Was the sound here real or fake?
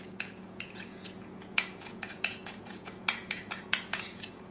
fake